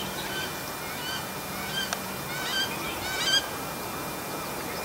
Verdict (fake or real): real